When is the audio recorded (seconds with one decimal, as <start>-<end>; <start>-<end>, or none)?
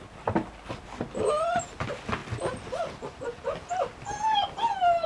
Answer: 0.0-5.1